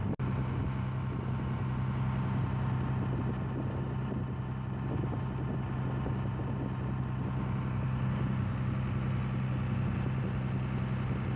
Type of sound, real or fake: real